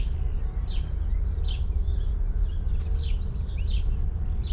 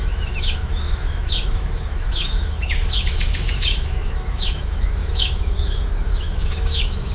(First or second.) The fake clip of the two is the second